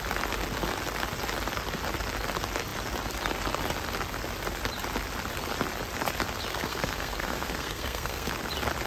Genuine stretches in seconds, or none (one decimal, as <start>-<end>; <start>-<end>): 0.0-6.5; 8.3-8.9